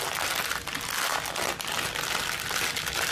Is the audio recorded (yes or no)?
yes